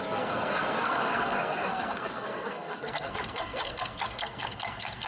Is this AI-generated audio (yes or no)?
yes